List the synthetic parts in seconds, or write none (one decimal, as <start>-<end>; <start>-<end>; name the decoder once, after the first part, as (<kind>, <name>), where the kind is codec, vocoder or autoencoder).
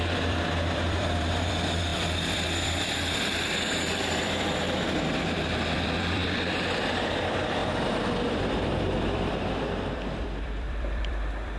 0.0-11.6 (vocoder, BigVGAN v2)